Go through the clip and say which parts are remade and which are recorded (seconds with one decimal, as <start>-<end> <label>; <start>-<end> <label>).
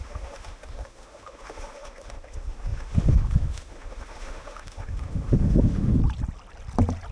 0.0-6.0 remade; 6.0-7.1 recorded